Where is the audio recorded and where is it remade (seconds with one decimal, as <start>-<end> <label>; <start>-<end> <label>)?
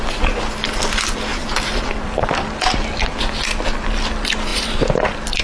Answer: 0.0-1.3 recorded; 1.3-2.7 remade; 2.7-4.5 recorded; 4.5-5.4 remade